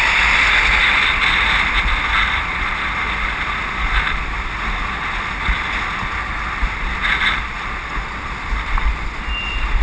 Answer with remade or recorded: recorded